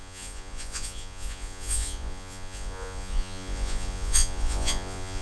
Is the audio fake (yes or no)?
yes